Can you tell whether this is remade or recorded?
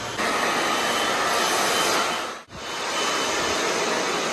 recorded